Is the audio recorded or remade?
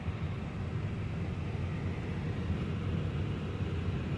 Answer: recorded